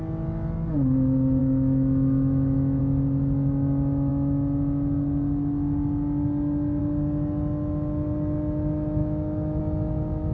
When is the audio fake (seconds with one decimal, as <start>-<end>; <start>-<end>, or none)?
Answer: 1.4-2.8; 9.0-9.6